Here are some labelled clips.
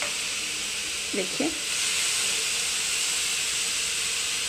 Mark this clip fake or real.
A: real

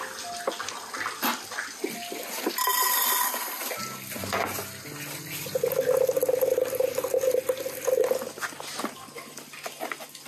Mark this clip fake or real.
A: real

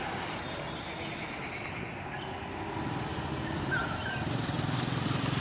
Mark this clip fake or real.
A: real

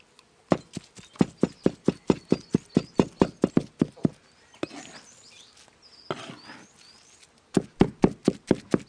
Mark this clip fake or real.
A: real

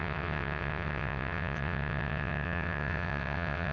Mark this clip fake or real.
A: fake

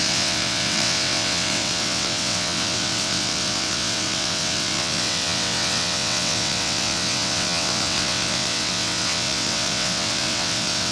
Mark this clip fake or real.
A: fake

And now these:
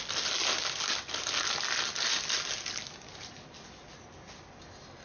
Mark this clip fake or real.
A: real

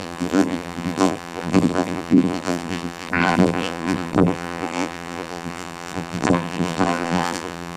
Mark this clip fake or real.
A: fake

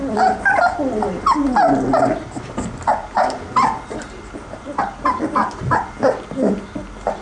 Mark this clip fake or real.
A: fake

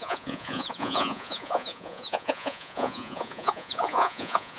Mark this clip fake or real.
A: fake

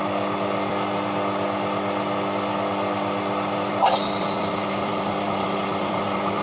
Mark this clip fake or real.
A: real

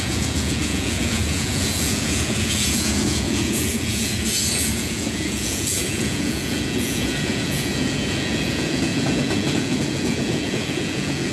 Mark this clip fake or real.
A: fake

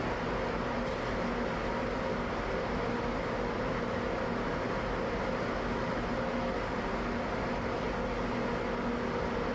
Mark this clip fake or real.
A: real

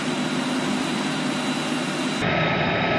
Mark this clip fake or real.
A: real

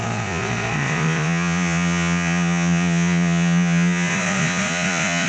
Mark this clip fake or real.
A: fake